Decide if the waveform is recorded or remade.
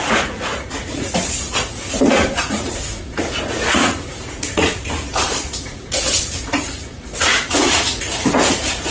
remade